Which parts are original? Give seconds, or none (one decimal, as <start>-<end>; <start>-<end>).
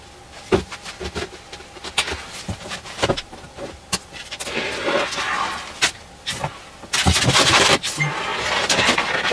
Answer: 0.0-9.3